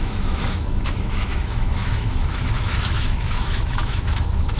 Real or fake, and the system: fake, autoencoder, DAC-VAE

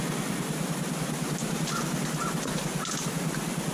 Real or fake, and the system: real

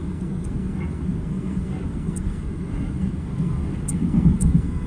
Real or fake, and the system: fake, codec, SNAC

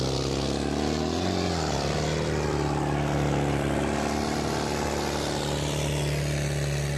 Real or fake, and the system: real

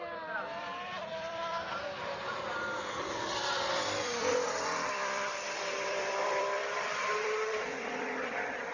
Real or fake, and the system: fake, vocoder, BigVGAN v2